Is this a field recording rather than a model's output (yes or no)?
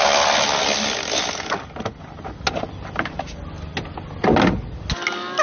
yes